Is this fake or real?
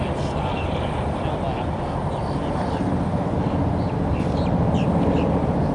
real